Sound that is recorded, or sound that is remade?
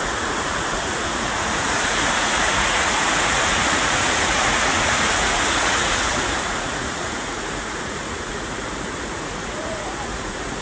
remade